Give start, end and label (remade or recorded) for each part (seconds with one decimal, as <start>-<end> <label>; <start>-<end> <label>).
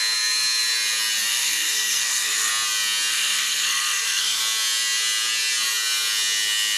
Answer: 0.0-1.3 recorded; 1.3-2.5 remade; 2.5-3.1 recorded; 3.1-4.4 remade; 4.4-6.8 recorded